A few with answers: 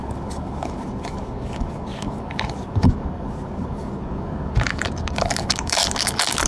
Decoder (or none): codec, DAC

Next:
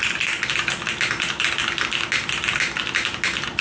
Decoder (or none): none